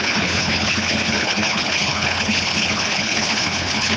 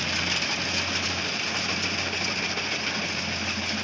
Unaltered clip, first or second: second